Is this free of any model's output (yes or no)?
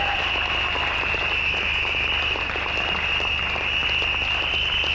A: yes